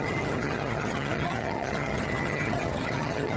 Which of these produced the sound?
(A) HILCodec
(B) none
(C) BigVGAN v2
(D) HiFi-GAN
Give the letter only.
D